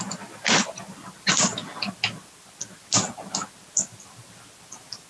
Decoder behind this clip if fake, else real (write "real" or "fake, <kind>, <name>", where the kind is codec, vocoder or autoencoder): real